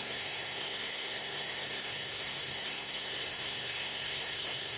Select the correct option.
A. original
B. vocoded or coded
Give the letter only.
B